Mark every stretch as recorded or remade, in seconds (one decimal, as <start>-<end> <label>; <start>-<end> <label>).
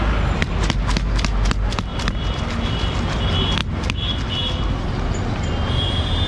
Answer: 0.0-1.9 recorded; 1.9-2.4 remade; 2.4-6.3 recorded